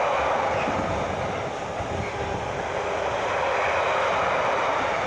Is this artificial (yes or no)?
no